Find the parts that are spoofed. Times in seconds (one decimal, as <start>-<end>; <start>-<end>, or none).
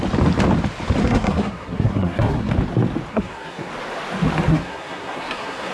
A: 1.0-2.5; 3.1-3.7; 4.5-5.7